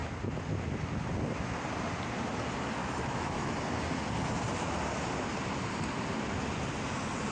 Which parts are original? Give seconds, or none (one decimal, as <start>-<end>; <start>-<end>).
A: 0.0-2.8; 3.5-7.3